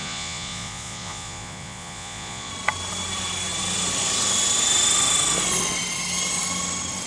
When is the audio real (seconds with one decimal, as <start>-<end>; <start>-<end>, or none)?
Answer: 2.5-7.1